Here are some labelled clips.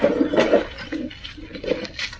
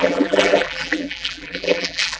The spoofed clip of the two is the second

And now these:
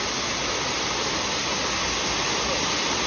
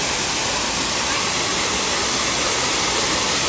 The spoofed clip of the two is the second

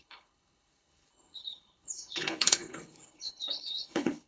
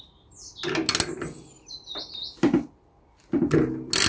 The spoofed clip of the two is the first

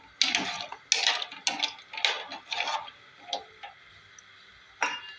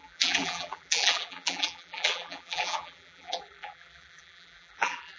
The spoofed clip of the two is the second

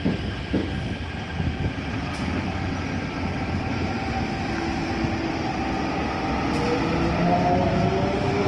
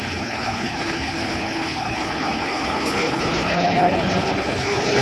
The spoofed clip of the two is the second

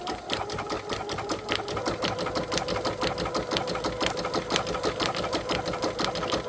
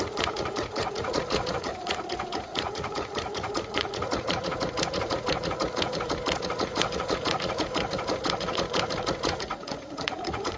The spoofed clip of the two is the second